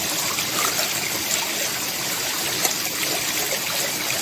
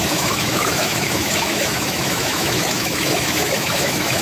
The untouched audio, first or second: first